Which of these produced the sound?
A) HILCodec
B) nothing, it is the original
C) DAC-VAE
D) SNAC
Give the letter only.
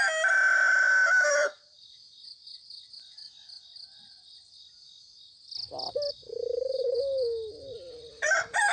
B